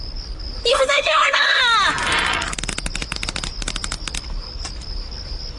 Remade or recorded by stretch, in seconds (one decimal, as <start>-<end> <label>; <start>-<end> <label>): 0.0-0.7 recorded; 0.7-1.6 remade; 1.6-5.6 recorded